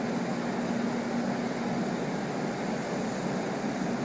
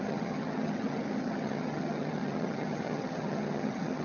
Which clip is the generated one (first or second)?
second